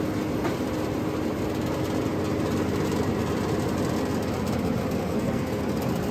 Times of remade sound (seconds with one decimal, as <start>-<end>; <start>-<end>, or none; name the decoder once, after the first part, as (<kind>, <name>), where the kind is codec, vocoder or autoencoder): 5.0-5.6 (codec, SNAC)